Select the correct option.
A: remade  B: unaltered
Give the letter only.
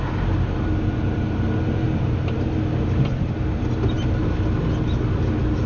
B